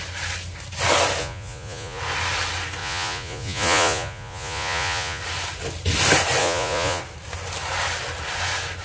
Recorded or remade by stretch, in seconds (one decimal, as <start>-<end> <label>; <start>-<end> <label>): 0.0-1.2 recorded; 1.2-2.0 remade; 2.0-2.8 recorded; 2.8-5.2 remade; 5.2-6.4 recorded; 6.4-7.0 remade; 7.0-8.8 recorded